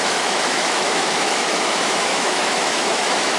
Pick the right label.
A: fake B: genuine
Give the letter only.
A